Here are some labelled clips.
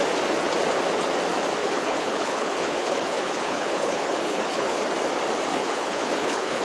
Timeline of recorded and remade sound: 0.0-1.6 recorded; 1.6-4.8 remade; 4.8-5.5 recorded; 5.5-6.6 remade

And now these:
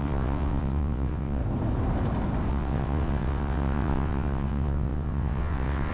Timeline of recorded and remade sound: 0.0-1.4 remade; 1.4-2.5 recorded; 2.5-5.9 remade